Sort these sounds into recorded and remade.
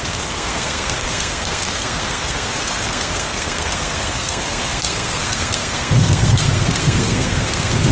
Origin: remade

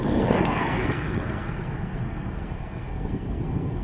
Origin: remade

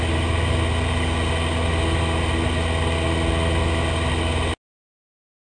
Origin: recorded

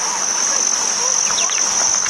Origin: recorded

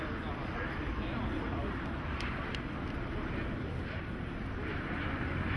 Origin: recorded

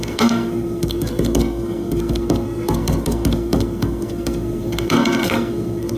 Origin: remade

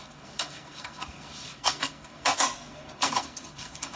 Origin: remade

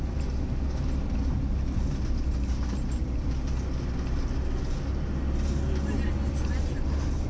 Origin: recorded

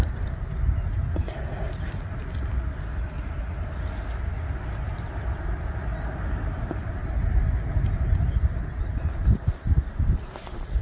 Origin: recorded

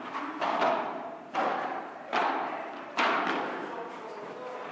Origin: recorded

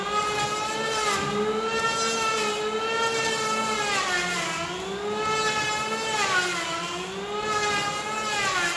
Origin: recorded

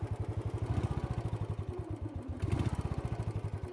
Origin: recorded